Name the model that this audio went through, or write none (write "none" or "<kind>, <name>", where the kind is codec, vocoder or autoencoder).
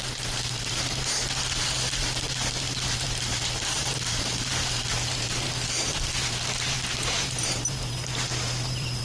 vocoder, BigVGAN v2